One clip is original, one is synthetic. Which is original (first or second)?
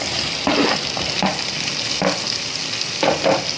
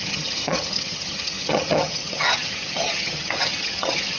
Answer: first